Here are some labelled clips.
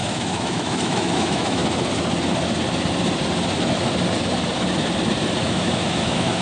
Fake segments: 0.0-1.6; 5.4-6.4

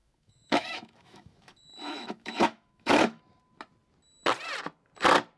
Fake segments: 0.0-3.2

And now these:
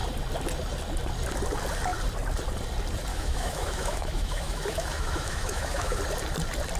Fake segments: 3.1-6.0

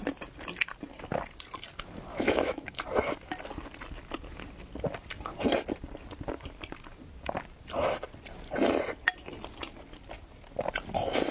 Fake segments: 2.1-2.8

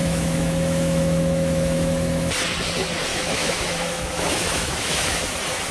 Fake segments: 0.0-2.3; 3.1-5.2

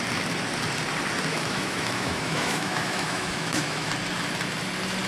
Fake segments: 1.3-3.9

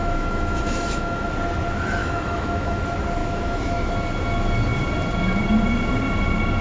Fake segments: 0.0-1.3; 2.0-2.8; 3.2-3.9